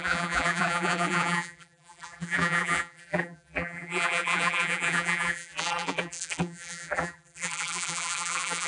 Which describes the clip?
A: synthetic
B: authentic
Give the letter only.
A